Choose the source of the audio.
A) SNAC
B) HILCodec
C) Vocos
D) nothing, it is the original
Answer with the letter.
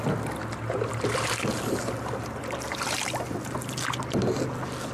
D